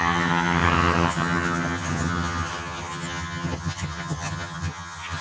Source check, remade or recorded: remade